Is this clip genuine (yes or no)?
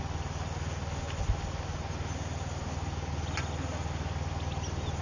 yes